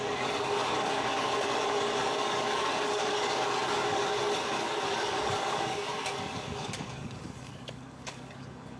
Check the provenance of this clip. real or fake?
fake